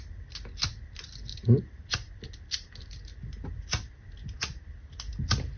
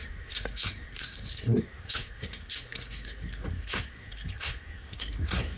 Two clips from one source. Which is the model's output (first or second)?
second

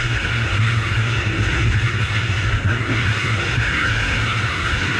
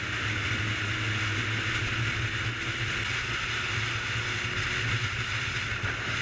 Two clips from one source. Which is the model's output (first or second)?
first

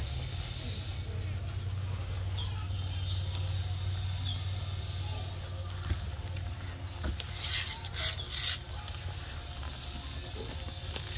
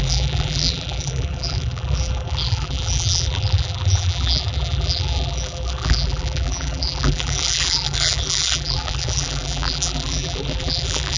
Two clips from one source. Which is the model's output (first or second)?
second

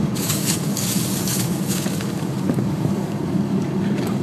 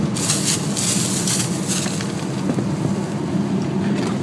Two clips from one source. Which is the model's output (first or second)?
first